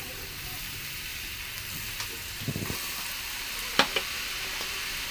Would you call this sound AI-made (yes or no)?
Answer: no